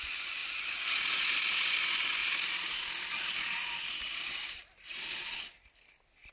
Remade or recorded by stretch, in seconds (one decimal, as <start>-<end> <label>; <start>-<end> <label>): 0.0-0.4 remade; 0.4-1.7 recorded; 1.7-2.2 remade; 2.2-6.3 recorded